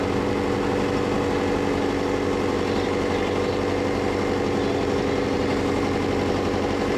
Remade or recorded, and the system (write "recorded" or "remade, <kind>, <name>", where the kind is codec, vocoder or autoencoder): recorded